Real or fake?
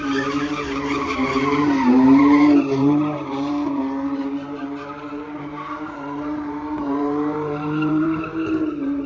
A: fake